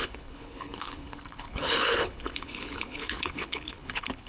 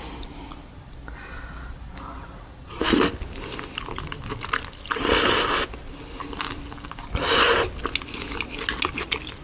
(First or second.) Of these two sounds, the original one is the second